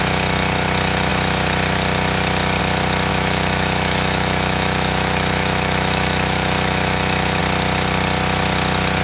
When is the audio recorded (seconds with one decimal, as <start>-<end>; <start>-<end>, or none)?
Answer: 0.0-3.1; 7.4-9.0